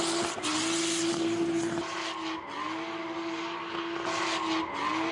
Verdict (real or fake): real